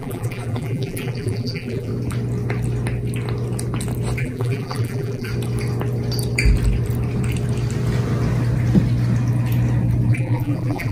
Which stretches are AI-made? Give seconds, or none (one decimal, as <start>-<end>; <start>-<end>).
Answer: 0.0-1.9; 4.2-5.3; 10.1-10.9

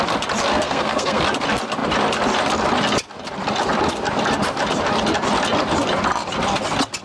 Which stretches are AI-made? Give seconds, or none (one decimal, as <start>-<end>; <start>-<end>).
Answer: 0.5-1.2